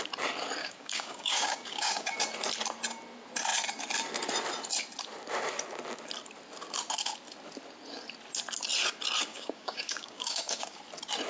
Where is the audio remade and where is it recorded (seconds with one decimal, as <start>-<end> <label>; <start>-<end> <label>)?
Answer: 0.0-0.6 recorded; 0.6-2.1 remade; 2.1-9.3 recorded; 9.3-10.8 remade; 10.8-11.3 recorded